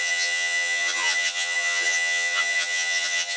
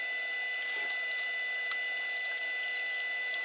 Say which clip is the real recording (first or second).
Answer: second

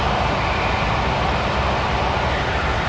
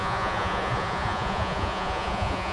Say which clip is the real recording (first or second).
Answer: first